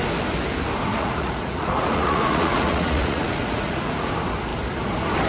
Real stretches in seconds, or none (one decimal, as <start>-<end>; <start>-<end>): 0.0-0.9; 4.1-5.3